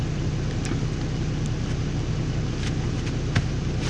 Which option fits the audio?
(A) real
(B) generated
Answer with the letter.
A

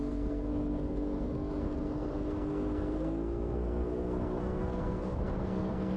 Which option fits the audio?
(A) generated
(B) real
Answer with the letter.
A